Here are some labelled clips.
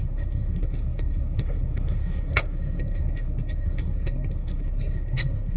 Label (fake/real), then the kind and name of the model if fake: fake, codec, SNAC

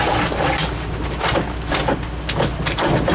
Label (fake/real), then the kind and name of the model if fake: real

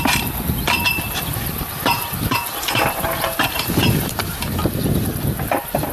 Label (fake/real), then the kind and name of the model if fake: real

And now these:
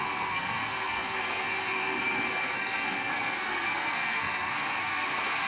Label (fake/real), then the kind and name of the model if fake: fake, codec, SNAC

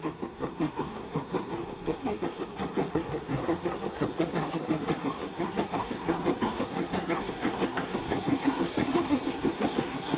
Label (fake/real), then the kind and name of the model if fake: fake, codec, SNAC